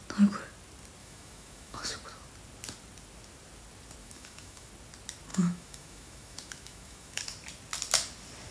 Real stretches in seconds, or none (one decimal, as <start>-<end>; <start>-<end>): 0.0-1.0; 1.9-4.0; 4.7-5.3; 7.2-8.5